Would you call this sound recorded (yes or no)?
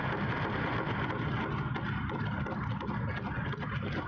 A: yes